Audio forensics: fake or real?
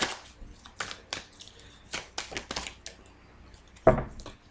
real